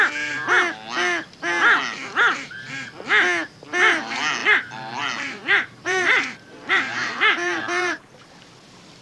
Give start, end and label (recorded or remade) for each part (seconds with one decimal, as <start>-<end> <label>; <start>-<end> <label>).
0.0-4.4 recorded; 4.4-8.1 remade; 8.1-9.0 recorded